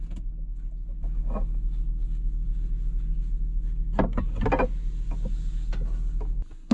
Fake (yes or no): no